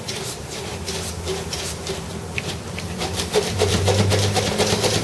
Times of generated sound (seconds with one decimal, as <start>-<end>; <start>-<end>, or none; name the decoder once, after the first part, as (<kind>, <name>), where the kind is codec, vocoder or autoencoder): 2.1-4.0 (vocoder, BigVGAN v2)